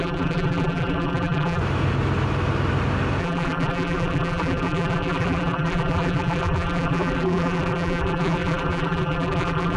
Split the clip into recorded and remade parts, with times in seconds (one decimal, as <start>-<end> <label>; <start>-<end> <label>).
0.0-1.6 remade; 1.6-3.2 recorded; 3.2-9.8 remade